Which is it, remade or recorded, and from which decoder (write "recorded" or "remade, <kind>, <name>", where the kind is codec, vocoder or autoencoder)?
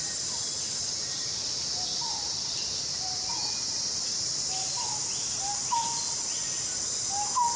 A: recorded